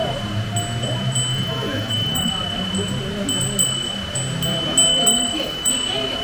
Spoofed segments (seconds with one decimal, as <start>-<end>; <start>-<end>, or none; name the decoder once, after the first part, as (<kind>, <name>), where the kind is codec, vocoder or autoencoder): 1.3-2.3 (autoencoder, DAC-VAE); 4.9-5.7